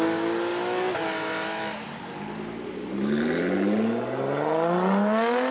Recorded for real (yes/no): yes